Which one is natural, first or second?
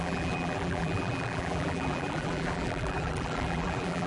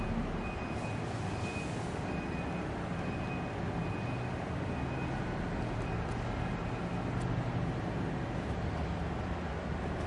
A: second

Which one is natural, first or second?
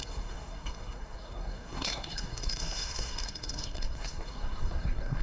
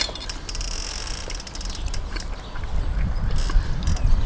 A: second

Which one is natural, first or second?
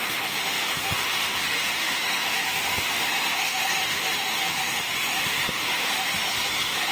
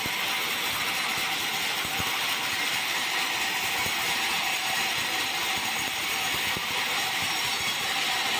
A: second